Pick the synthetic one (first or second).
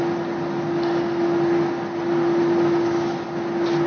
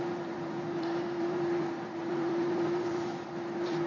second